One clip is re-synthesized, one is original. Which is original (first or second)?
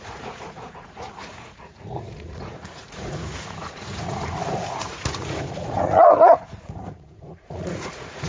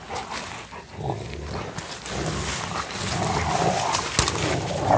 second